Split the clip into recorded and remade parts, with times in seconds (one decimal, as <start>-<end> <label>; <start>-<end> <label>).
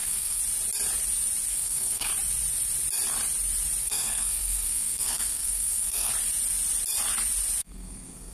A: 0.0-0.4 remade; 0.4-1.5 recorded; 1.5-2.1 remade; 2.1-3.8 recorded; 3.8-6.1 remade; 6.1-7.6 recorded; 7.6-8.3 remade